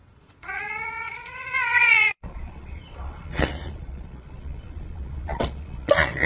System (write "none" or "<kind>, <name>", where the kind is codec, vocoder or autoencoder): vocoder, Vocos